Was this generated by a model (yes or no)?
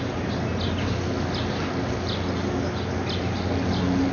no